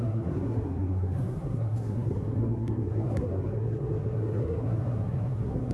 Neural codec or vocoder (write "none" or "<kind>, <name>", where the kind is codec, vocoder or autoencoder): codec, SNAC